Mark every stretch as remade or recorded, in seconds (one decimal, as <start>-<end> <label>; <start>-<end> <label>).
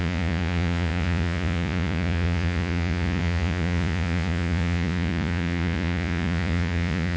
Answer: 0.0-7.2 remade